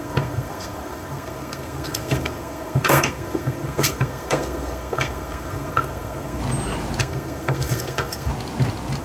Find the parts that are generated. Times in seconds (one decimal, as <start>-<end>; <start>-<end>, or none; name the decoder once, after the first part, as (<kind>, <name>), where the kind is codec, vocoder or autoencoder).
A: 0.0-6.4 (codec, SNAC); 7.0-8.3